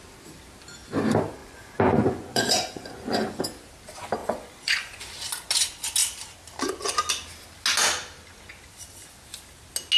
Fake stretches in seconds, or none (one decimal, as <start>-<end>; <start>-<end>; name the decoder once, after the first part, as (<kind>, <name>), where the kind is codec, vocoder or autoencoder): 1.4-3.4 (vocoder, Vocos); 4.2-5.0